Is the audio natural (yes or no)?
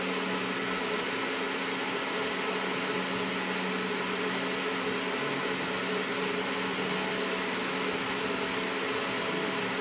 yes